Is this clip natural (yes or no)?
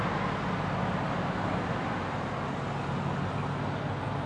yes